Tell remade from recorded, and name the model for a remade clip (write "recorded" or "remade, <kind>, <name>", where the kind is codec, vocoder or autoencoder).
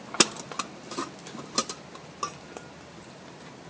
recorded